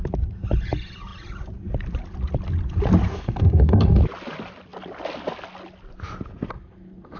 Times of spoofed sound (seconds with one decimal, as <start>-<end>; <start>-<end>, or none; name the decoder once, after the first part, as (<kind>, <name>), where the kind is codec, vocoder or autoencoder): 3.1-4.0 (codec, SNAC)